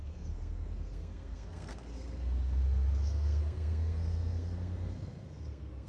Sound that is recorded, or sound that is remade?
remade